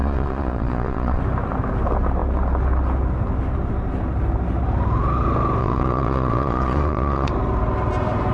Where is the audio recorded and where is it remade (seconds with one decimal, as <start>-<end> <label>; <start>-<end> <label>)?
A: 0.0-1.2 remade; 1.2-5.6 recorded; 5.6-7.3 remade; 7.3-8.3 recorded

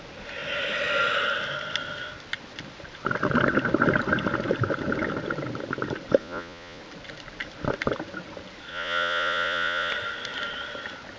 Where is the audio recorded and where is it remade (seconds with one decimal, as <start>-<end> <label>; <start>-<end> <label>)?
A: 0.0-6.2 recorded; 6.2-6.8 remade; 6.8-8.7 recorded; 8.7-9.9 remade; 9.9-11.2 recorded

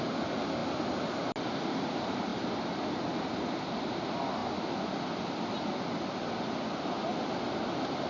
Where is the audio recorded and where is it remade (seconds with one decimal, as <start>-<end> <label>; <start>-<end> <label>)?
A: 0.0-8.1 recorded

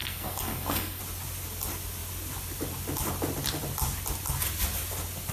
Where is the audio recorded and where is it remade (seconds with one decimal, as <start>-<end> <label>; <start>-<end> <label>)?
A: 0.0-1.0 remade; 1.0-5.3 recorded

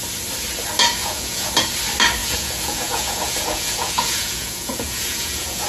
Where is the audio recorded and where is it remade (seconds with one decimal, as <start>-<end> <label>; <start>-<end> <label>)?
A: 0.0-1.0 recorded; 1.0-1.5 remade; 1.5-2.2 recorded; 2.2-5.7 remade

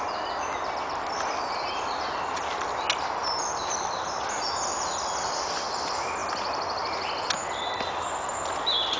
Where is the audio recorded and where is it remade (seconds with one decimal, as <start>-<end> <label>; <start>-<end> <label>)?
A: 0.0-9.0 recorded